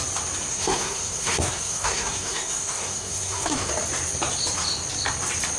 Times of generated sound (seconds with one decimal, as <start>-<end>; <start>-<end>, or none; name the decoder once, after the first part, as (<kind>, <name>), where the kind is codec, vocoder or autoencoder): 0.5-3.7 (codec, SNAC)